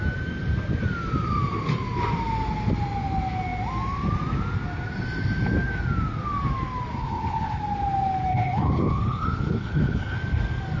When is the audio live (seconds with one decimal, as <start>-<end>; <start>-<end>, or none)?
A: 0.0-6.9; 7.6-8.3; 10.2-10.8